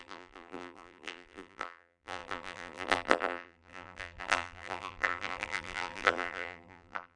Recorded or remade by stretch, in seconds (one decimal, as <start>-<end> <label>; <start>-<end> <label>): 0.0-7.2 remade